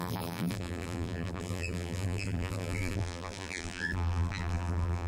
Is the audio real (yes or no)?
no